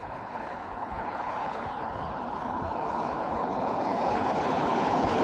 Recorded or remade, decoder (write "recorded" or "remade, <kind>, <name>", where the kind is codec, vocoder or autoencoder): remade, codec, HILCodec